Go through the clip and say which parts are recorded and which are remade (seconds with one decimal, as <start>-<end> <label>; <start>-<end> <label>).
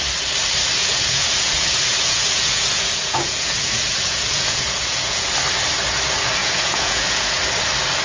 0.0-0.8 recorded; 0.8-5.3 remade; 5.3-6.4 recorded; 6.4-7.4 remade; 7.4-8.0 recorded